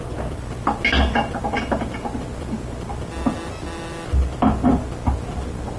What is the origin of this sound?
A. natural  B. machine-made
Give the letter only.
A